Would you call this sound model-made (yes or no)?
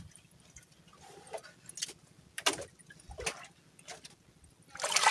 no